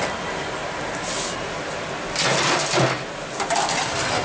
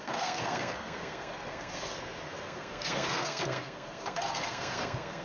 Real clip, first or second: first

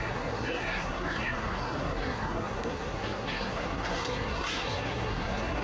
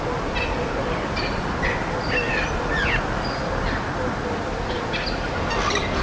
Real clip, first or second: second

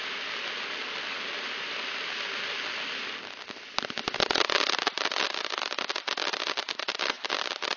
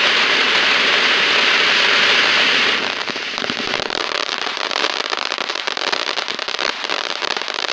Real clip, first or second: first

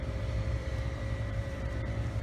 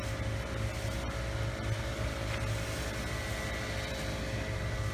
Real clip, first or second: second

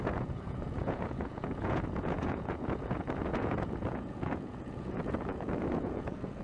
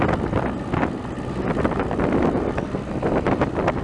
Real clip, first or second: second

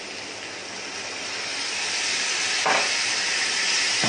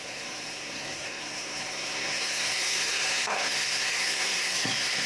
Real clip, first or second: first